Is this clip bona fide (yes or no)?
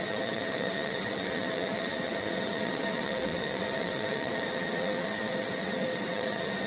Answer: no